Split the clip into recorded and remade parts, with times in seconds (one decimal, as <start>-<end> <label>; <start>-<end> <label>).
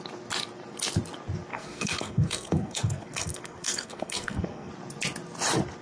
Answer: 0.0-1.5 recorded; 1.5-4.7 remade; 4.7-5.8 recorded